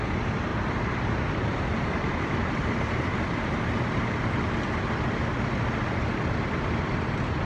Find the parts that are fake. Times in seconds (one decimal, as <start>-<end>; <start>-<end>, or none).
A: 0.5-1.6